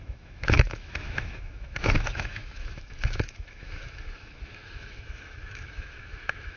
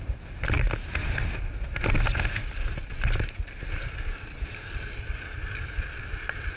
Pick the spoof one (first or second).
first